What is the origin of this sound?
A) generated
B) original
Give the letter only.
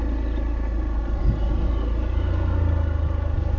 B